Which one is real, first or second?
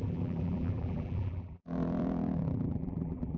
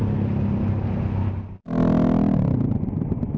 second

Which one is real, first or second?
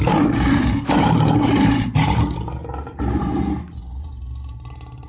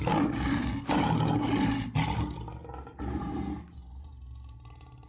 second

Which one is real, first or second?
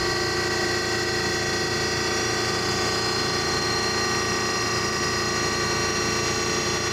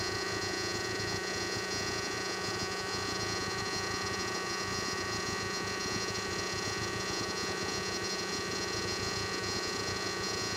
first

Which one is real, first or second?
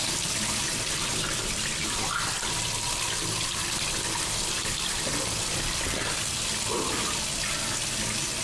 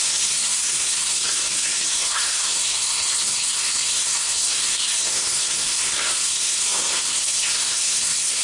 first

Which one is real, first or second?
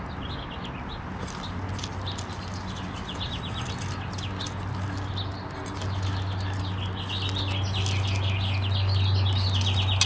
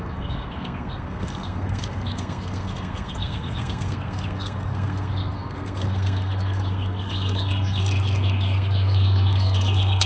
first